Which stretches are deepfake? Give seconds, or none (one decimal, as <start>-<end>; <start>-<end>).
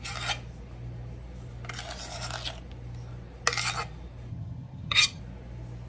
4.3-5.2